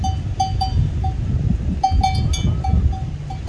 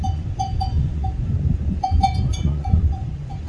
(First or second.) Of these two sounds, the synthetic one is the second